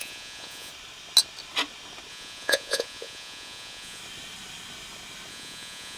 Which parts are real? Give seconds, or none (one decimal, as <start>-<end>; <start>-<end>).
0.7-2.1; 4.0-5.3